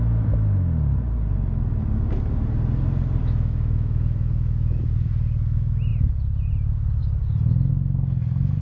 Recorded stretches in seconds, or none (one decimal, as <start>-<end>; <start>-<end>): 0.0-3.2; 5.1-8.6